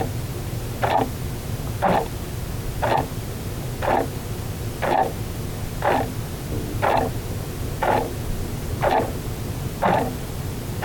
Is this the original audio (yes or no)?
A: yes